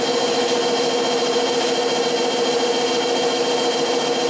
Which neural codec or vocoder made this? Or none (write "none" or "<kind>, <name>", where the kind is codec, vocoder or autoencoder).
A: none